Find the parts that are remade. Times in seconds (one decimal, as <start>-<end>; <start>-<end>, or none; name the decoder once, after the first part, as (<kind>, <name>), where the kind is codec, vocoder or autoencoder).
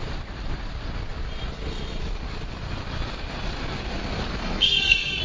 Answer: 4.4-5.2 (codec, SNAC)